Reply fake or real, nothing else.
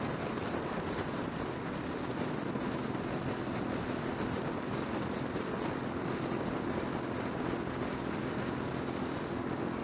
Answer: real